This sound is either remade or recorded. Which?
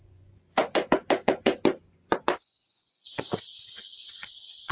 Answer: remade